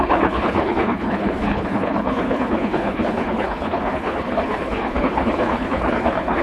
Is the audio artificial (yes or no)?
yes